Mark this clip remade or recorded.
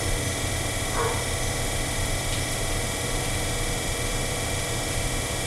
remade